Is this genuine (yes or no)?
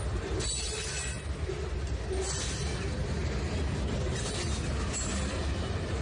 yes